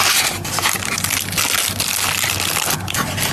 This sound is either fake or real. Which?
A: real